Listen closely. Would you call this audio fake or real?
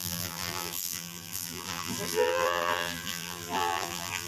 fake